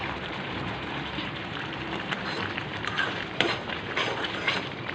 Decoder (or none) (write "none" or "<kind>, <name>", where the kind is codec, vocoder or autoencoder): vocoder, BigVGAN v2